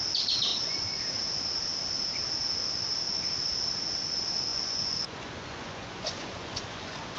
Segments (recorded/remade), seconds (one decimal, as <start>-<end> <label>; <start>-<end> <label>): 0.0-0.5 recorded; 0.5-1.0 remade; 1.0-4.5 recorded; 4.5-7.2 remade